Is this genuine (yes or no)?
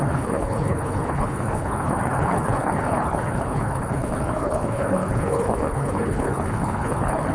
no